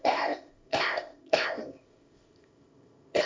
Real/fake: fake